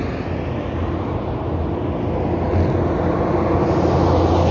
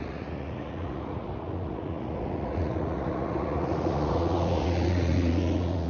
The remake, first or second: second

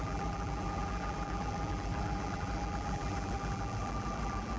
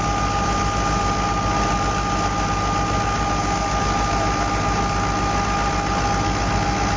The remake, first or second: first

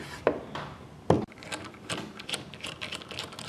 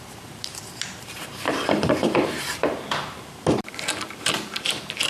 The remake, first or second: second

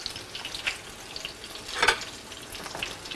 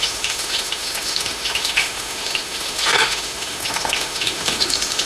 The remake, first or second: second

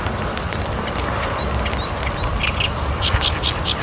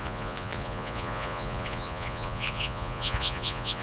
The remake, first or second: second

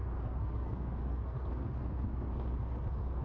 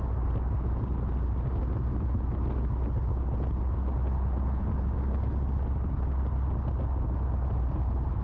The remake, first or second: first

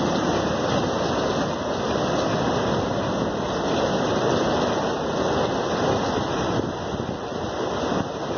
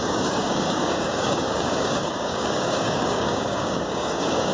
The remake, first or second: second